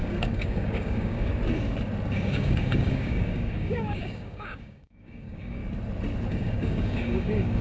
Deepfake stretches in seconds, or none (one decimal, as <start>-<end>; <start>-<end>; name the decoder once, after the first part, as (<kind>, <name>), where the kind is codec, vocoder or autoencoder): 0.0-1.3 (codec, DAC); 2.1-5.6; 6.3-7.6